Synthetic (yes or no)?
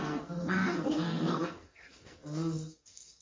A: yes